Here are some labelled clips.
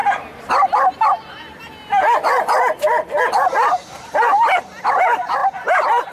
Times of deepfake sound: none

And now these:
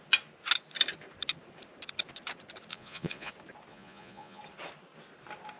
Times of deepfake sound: 2.7-3.3 (vocoder, Vocos); 3.7-4.4

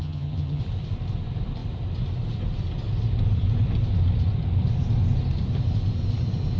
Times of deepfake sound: 0.0-0.6 (vocoder, HiFi-GAN)

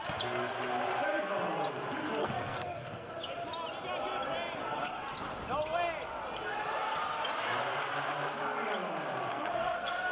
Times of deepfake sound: 2.2-3.1 (codec, SNAC); 9.3-10.1

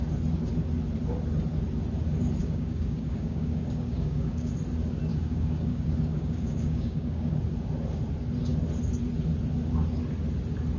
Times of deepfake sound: 2.4-4.5 (codec, DAC); 5.1-7.4

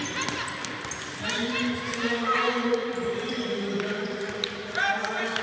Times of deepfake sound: 2.8-3.7 (vocoder, BigVGAN v2)

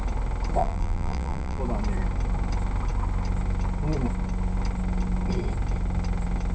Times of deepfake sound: 0.6-1.6 (vocoder, BigVGAN v2)